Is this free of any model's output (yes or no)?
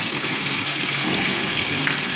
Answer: no